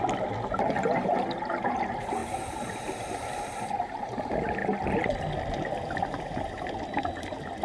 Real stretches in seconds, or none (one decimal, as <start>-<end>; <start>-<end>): 0.0-7.6